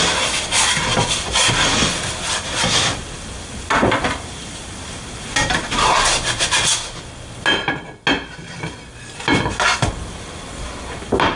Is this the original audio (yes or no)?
yes